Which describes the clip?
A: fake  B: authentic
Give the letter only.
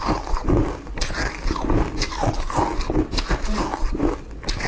B